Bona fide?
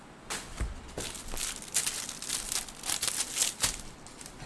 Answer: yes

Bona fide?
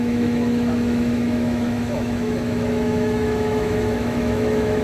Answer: no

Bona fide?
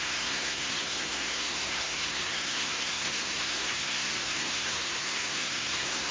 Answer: no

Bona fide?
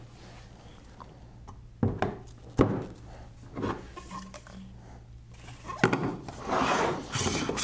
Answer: yes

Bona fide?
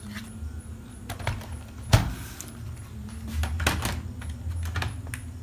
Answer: yes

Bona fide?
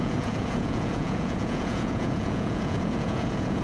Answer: no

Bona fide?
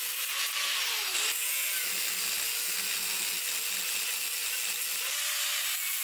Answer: yes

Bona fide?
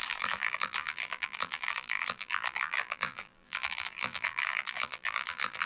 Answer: no